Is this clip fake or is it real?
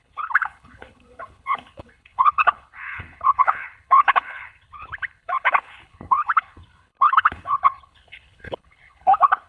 fake